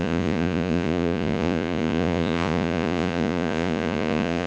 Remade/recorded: remade